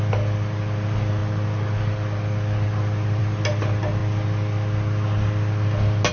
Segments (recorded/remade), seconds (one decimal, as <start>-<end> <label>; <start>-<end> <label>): 0.0-6.1 recorded